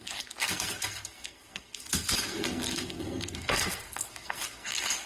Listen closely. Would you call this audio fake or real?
fake